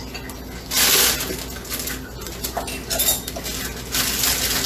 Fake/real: real